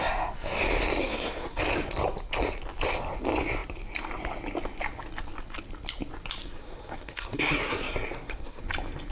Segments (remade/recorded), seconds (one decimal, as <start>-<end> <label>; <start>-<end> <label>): 0.0-1.0 recorded; 1.0-1.6 remade; 1.6-6.4 recorded; 6.4-8.6 remade; 8.6-9.1 recorded